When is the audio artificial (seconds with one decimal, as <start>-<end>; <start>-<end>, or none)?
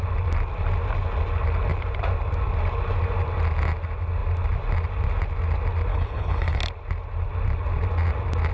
5.9-6.6